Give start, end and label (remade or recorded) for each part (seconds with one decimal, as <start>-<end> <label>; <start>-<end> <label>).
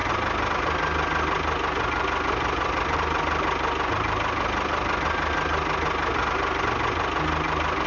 0.0-7.9 recorded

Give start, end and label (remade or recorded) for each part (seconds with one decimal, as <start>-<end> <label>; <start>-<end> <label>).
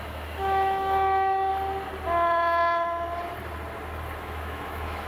0.0-1.5 remade; 1.5-4.2 recorded; 4.2-5.1 remade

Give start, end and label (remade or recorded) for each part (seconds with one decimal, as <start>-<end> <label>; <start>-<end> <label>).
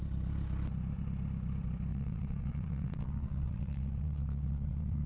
0.0-1.9 recorded; 1.9-5.1 remade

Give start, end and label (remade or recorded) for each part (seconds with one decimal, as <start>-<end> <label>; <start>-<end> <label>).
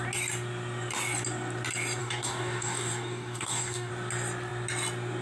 0.0-2.0 recorded; 2.0-3.9 remade; 3.9-5.2 recorded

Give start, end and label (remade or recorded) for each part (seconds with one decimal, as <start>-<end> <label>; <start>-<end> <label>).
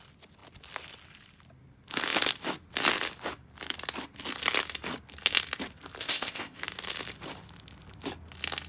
0.0-6.0 recorded; 6.0-6.6 remade; 6.6-8.7 recorded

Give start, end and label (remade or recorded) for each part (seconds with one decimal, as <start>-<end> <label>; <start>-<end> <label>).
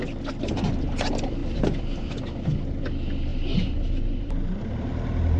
0.0-3.3 recorded; 3.3-4.9 remade; 4.9-5.4 recorded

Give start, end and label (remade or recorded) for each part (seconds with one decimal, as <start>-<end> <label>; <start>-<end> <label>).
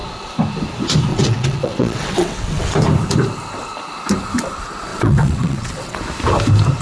0.0-1.1 recorded; 1.1-2.7 remade; 2.7-4.9 recorded; 4.9-6.0 remade; 6.0-6.8 recorded